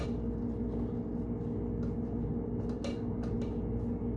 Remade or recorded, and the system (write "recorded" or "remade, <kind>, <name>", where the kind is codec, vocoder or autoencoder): recorded